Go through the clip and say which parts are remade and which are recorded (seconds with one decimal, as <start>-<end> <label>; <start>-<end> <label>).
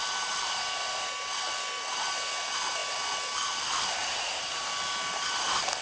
0.0-4.0 recorded; 4.0-4.7 remade; 4.7-5.8 recorded